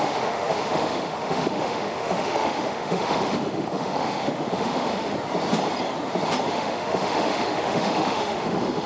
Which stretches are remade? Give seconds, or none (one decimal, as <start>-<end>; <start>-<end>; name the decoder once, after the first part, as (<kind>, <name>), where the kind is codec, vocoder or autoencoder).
0.0-5.1 (autoencoder, DAC-VAE); 6.5-8.9